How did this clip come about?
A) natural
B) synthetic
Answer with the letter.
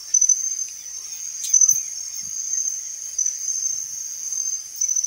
A